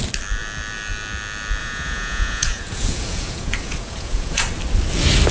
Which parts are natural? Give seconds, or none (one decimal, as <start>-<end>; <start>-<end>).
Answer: 0.0-1.6; 4.4-5.3